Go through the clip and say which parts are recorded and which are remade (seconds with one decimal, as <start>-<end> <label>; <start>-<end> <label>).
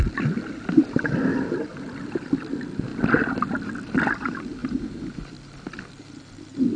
0.0-4.6 recorded; 4.6-5.3 remade; 5.3-6.8 recorded